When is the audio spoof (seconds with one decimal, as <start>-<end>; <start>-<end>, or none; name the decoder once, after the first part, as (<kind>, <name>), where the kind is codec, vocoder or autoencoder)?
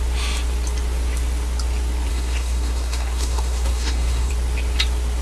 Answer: 2.1-4.3 (codec, SNAC)